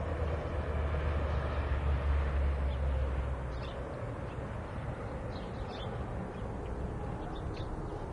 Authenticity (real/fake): real